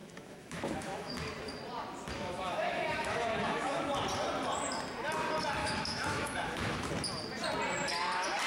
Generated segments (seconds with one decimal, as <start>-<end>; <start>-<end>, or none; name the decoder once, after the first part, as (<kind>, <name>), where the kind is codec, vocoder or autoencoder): 0.0-1.1 (autoencoder, DAC-VAE); 2.2-3.9; 5.6-6.9